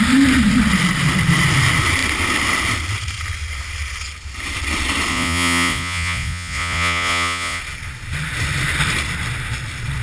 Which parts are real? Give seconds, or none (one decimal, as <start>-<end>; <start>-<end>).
0.0-5.1; 7.6-10.0